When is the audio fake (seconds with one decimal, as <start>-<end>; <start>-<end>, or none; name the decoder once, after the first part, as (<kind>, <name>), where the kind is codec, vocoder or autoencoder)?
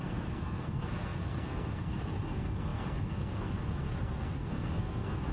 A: 0.0-5.3 (codec, SNAC)